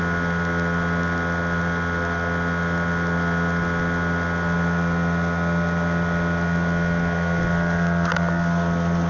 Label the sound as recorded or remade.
recorded